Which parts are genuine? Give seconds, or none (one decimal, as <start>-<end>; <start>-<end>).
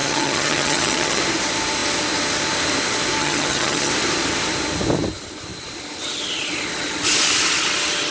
1.2-3.2; 3.9-8.1